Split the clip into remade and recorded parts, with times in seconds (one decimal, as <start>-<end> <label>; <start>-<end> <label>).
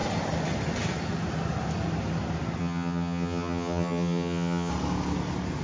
0.0-2.6 recorded; 2.6-4.7 remade; 4.7-5.6 recorded